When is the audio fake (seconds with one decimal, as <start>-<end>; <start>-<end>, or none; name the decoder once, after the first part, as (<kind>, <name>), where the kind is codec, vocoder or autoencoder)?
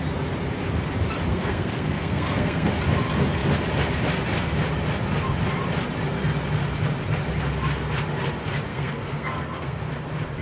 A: 1.3-2.7 (codec, SNAC); 8.7-9.8